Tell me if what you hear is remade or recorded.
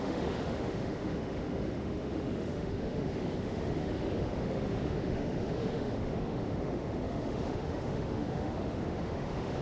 remade